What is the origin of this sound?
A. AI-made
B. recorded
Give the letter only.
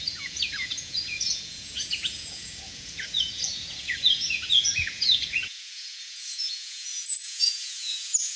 A